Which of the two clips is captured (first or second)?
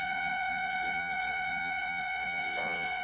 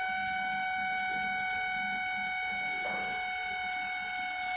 second